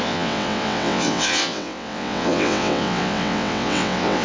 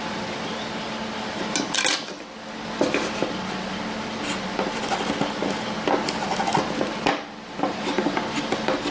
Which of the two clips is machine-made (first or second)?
first